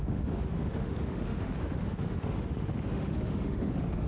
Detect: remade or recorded remade